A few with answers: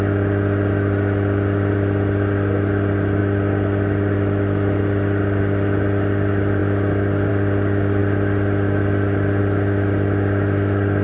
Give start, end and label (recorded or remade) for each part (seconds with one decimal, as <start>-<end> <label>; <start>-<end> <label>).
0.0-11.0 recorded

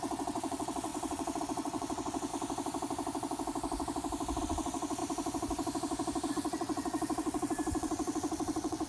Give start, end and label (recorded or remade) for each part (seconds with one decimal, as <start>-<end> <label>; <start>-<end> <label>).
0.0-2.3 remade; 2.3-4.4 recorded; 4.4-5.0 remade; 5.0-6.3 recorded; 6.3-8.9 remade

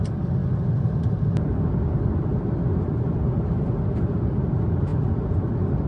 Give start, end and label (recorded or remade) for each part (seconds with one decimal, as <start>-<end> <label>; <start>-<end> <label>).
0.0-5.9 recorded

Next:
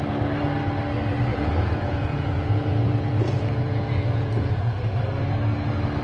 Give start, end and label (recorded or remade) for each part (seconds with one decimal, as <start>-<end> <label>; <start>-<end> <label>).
0.0-1.3 recorded; 1.3-4.8 remade; 4.8-6.0 recorded